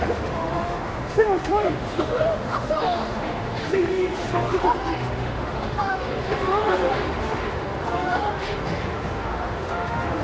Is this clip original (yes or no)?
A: no